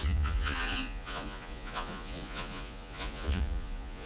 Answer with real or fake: fake